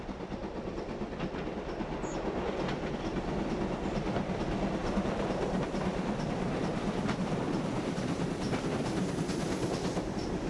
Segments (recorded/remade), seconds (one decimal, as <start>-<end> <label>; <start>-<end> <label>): 0.0-0.4 recorded; 0.4-1.2 remade; 1.2-4.8 recorded; 4.8-5.6 remade; 5.6-6.7 recorded; 6.7-9.1 remade; 9.1-10.5 recorded